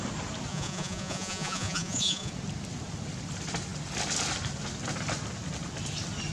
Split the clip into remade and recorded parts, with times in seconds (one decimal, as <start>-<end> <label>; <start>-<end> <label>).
0.0-0.5 recorded; 0.5-2.3 remade; 2.3-6.3 recorded